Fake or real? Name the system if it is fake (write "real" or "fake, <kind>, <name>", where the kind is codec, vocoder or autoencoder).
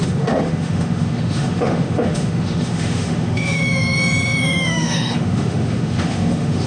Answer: fake, autoencoder, DAC-VAE